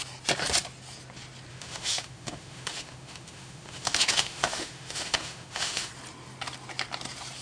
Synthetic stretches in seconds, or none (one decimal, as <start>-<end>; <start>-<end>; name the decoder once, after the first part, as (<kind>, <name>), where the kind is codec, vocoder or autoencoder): 1.5-5.9 (autoencoder, DAC-VAE)